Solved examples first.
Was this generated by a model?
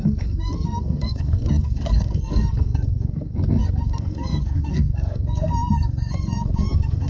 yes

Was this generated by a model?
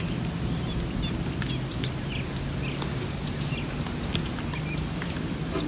no